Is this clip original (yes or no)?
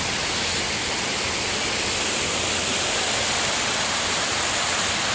yes